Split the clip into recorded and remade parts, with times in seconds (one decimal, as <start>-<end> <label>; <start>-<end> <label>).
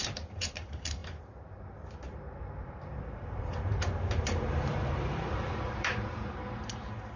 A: 0.0-7.2 remade